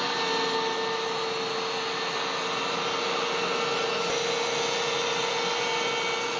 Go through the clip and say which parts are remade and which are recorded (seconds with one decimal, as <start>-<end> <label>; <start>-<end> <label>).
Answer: 0.0-6.4 recorded